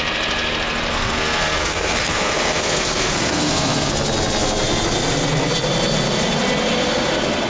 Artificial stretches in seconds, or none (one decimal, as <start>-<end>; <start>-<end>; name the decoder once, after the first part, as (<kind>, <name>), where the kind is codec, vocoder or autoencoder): 0.9-3.9 (codec, SNAC)